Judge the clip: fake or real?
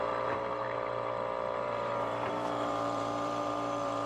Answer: fake